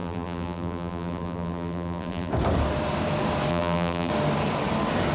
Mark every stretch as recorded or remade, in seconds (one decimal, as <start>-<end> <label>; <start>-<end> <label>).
0.0-2.3 remade; 2.3-3.5 recorded; 3.5-4.1 remade; 4.1-5.1 recorded